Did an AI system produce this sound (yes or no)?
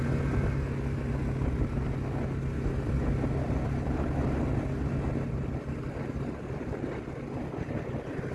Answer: no